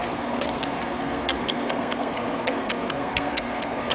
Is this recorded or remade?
remade